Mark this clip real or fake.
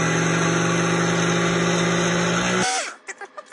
real